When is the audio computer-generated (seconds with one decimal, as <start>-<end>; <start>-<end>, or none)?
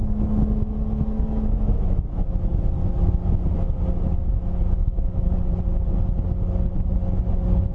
0.0-2.5; 4.2-5.3